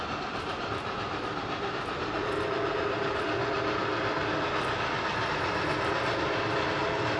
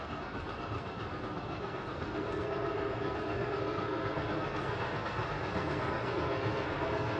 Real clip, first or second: first